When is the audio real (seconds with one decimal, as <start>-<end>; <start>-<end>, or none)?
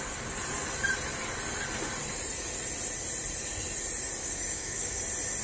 0.0-4.2; 5.0-5.4